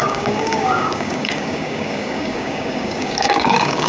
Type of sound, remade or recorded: remade